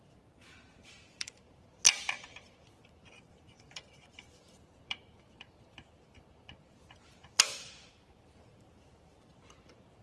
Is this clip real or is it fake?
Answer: fake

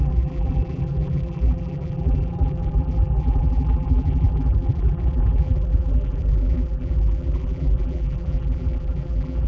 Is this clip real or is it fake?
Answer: fake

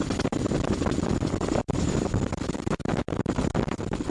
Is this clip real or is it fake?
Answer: real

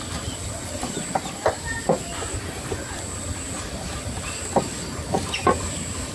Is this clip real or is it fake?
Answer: real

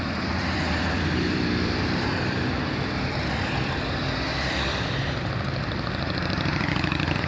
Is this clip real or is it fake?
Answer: fake